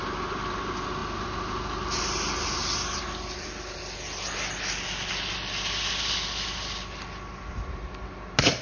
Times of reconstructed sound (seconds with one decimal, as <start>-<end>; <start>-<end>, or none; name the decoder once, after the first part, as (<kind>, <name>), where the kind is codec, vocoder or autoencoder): none